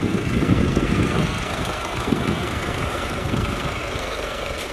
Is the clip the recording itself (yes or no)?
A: no